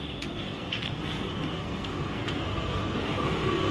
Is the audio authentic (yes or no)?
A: no